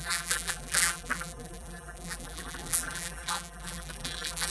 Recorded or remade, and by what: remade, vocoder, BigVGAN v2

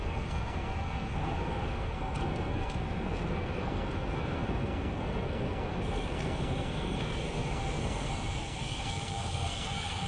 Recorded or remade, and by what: remade, codec, SNAC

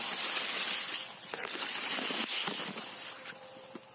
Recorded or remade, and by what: recorded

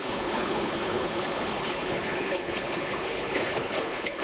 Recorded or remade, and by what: remade, codec, HILCodec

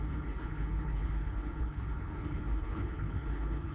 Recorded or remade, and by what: remade, codec, HILCodec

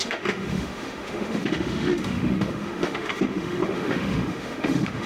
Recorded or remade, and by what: remade, autoencoder, DAC-VAE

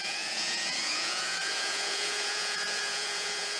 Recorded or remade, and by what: remade, vocoder, Vocos